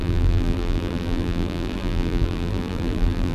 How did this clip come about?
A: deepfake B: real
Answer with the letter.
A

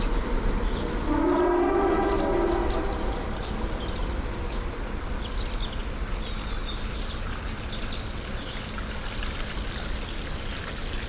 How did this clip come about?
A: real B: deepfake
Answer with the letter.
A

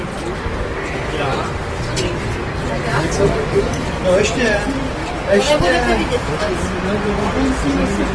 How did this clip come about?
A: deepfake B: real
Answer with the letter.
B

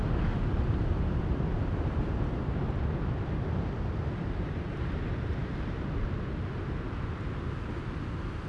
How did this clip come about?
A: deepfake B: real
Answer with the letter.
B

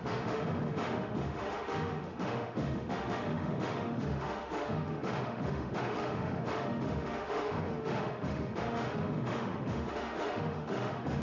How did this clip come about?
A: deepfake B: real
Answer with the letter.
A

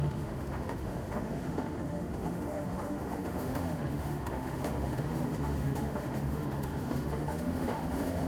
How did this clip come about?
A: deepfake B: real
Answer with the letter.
A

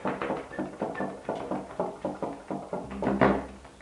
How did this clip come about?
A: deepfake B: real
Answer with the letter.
B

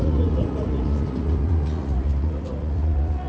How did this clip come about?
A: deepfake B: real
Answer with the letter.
A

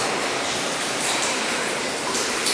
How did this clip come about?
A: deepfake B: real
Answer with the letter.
A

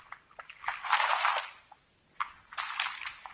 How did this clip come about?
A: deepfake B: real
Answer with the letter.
B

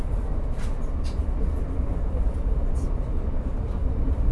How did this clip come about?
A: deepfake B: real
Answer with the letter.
B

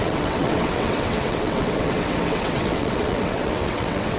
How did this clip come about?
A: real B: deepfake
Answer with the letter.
B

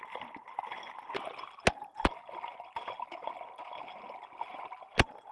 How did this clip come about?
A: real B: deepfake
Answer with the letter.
A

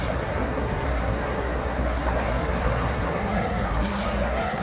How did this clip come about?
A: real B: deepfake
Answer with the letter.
B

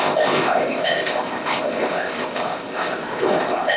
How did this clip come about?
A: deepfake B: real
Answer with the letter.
A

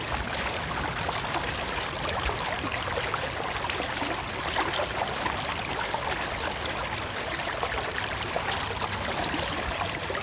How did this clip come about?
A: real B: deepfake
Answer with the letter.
A